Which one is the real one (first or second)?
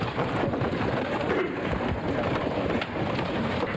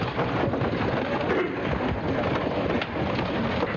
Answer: second